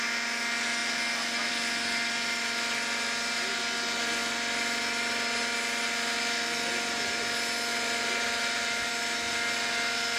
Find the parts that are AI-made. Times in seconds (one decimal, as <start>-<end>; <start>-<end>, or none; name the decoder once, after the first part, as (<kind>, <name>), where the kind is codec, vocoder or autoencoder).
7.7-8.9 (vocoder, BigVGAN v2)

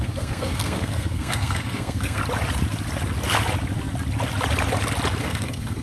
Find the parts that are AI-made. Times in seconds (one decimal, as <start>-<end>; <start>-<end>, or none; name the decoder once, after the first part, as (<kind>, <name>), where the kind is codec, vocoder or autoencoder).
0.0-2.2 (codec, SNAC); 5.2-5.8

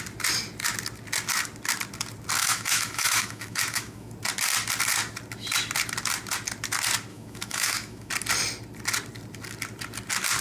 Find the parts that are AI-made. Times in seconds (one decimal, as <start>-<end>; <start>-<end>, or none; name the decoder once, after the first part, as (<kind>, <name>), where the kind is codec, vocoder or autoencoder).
2.4-4.1 (autoencoder, DAC-VAE); 7.1-8.1

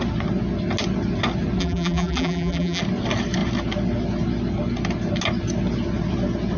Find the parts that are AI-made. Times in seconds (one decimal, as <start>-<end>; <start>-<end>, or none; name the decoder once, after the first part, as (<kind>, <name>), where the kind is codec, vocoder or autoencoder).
1.6-2.8 (vocoder, BigVGAN v2)

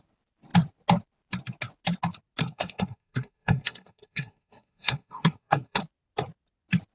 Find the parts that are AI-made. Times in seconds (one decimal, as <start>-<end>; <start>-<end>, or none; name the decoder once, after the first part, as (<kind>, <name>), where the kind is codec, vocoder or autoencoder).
2.4-5.8 (codec, SNAC)

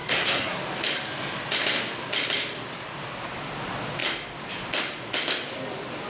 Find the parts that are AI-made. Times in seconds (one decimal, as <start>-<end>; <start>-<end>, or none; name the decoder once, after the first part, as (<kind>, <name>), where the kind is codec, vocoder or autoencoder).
0.0-0.6 (codec, SNAC)